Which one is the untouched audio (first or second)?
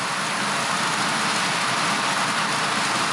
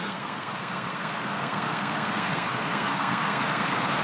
first